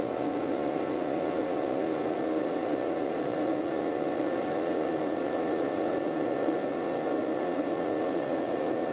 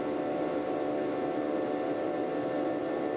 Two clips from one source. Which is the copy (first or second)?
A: first